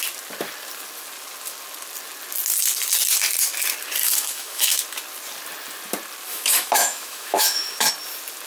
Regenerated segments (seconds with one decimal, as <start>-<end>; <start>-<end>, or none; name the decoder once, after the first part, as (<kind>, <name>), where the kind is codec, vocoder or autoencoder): 4.0-4.8 (autoencoder, DAC-VAE); 6.3-7.9